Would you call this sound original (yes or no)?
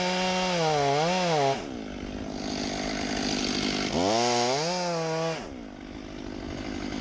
yes